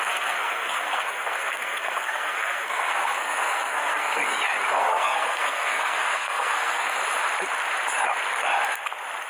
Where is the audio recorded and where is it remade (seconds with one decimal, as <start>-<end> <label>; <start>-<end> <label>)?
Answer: 0.0-4.2 remade; 4.2-4.8 recorded; 4.8-7.0 remade; 7.0-9.3 recorded